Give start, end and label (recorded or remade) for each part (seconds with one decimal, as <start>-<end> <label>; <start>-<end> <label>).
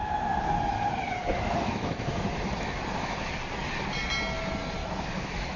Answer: 0.0-1.2 recorded; 1.2-3.3 remade; 3.3-4.8 recorded; 4.8-5.6 remade